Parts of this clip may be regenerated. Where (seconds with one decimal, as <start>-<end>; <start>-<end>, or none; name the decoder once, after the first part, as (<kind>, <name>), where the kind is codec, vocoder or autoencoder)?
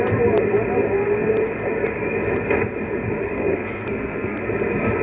3.3-4.4 (codec, SNAC)